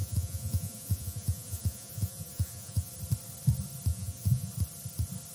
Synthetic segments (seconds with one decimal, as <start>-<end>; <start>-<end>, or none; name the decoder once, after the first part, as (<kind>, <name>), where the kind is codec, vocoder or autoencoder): 0.0-2.9 (vocoder, Vocos); 3.9-4.5